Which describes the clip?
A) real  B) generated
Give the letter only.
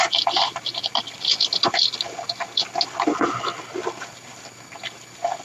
A